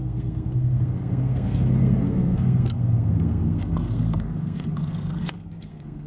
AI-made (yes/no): yes